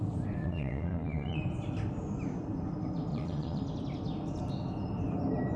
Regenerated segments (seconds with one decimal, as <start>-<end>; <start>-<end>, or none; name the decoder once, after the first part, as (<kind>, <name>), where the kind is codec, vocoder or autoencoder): 0.4-1.4 (vocoder, Vocos); 3.1-3.6